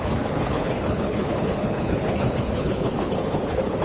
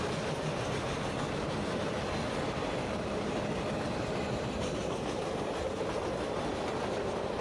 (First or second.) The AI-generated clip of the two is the first